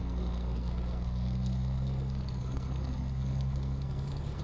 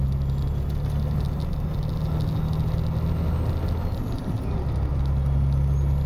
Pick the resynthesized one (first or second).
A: first